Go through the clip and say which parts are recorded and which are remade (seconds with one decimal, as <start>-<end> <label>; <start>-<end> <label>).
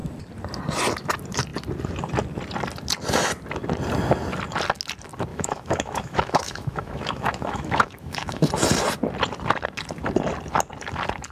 0.0-5.3 recorded; 5.3-8.5 remade; 8.5-11.3 recorded